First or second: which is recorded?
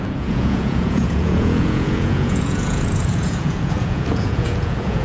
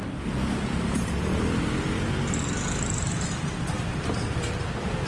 second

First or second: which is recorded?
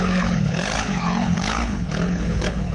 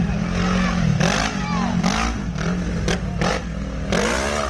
second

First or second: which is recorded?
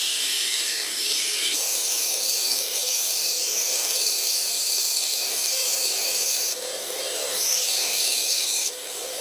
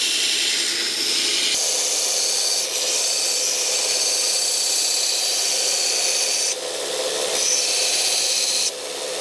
second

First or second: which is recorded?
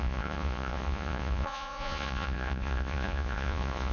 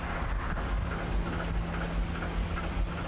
second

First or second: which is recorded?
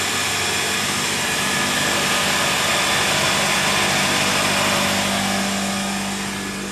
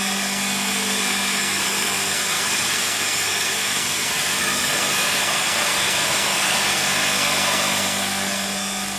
first